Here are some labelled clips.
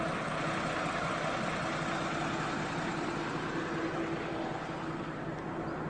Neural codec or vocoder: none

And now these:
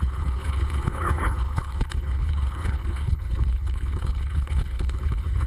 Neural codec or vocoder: codec, HILCodec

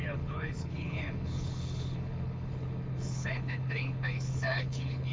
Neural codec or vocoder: codec, HILCodec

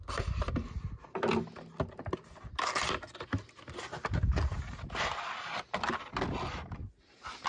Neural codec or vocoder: none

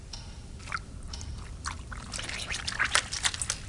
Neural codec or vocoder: none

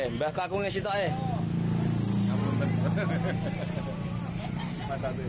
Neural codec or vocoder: none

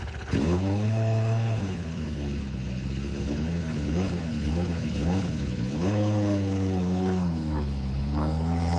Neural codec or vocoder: codec, HILCodec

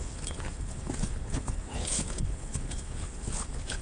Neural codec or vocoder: codec, HILCodec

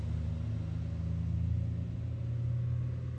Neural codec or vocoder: none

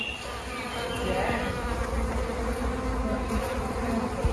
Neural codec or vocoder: none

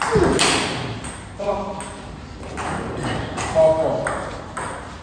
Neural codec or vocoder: none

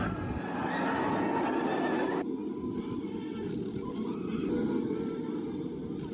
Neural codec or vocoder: none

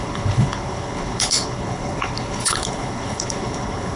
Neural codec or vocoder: codec, HILCodec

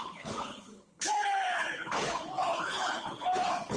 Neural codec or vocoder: codec, HILCodec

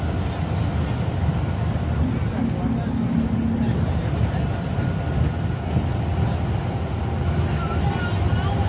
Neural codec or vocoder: none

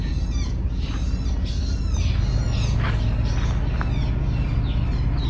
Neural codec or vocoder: none